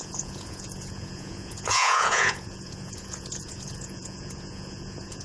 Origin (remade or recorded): remade